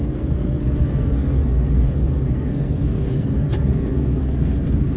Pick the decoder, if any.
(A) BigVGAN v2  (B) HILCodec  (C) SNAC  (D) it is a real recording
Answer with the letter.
C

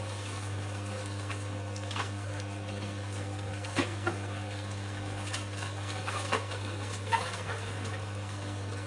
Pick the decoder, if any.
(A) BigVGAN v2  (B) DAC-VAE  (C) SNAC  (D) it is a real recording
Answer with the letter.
C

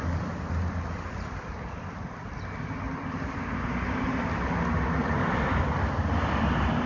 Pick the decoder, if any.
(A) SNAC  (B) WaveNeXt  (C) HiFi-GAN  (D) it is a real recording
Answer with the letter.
D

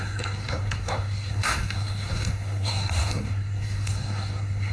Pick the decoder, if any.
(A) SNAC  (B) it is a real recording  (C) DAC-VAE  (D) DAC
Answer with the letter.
A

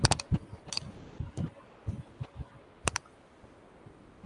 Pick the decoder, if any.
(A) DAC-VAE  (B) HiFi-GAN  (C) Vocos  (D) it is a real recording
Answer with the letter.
D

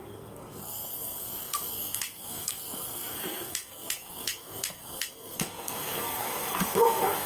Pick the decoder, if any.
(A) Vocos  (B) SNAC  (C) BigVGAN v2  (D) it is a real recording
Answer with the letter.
B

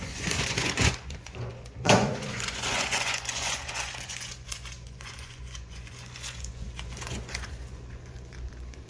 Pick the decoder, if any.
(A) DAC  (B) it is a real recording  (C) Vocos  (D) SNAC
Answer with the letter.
C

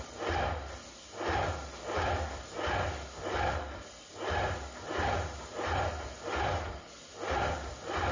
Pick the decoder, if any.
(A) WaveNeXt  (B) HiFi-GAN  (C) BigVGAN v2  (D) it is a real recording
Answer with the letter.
D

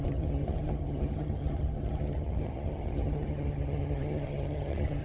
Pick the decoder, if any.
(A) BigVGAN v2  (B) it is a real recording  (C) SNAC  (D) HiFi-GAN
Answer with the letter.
D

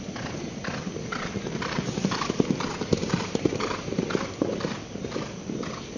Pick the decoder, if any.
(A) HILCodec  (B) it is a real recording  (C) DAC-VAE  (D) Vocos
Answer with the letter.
B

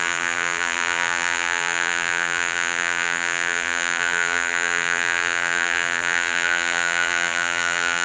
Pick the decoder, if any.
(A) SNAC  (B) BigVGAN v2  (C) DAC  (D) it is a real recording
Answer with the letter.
B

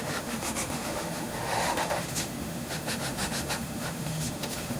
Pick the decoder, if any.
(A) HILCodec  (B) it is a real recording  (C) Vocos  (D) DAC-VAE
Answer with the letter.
D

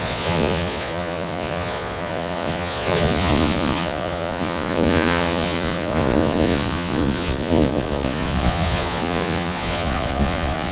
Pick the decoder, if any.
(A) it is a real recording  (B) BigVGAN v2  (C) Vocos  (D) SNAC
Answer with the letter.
C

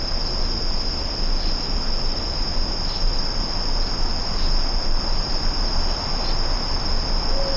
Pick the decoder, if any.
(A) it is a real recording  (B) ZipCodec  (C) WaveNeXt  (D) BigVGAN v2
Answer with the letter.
A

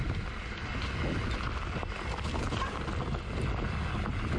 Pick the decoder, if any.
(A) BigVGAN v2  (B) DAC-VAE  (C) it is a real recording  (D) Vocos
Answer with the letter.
C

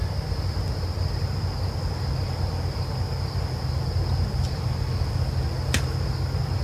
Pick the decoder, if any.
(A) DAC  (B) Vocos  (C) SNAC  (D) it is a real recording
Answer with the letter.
D